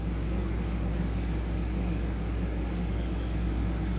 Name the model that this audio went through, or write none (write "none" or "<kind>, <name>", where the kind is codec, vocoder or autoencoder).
codec, DAC